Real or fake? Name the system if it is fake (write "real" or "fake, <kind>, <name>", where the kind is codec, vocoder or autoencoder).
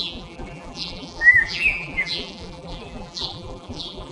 fake, vocoder, BigVGAN v2